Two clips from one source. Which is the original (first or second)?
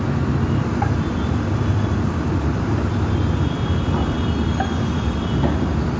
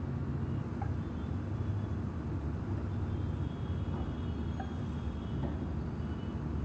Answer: second